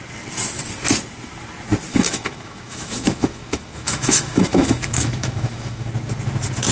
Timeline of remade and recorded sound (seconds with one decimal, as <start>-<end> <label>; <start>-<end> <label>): 0.0-1.9 recorded; 1.9-5.9 remade; 5.9-6.7 recorded